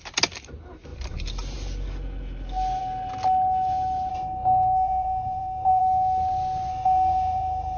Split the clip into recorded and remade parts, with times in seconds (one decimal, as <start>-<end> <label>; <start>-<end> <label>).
0.0-4.1 recorded; 4.1-5.8 remade; 5.8-6.7 recorded; 6.7-7.8 remade